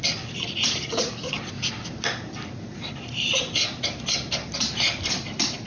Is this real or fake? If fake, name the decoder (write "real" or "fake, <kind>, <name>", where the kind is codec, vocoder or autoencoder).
real